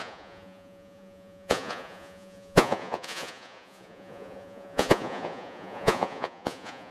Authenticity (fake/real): fake